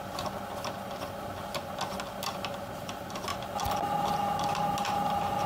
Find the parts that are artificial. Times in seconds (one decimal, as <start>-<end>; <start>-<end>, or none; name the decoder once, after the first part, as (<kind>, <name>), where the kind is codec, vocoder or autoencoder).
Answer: none